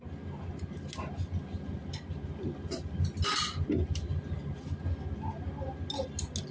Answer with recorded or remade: recorded